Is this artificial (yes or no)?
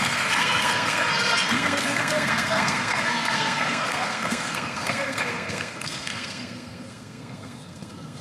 yes